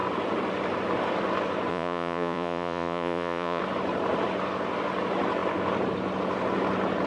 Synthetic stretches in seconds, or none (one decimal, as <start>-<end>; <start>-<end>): 1.7-3.6